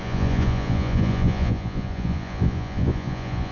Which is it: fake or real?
fake